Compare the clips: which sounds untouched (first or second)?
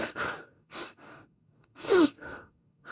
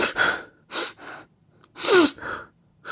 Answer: second